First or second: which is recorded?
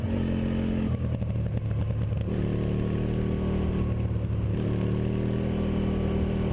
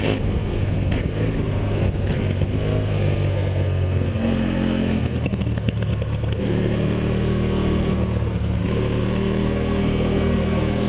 first